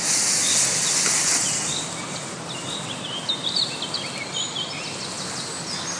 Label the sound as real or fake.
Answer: real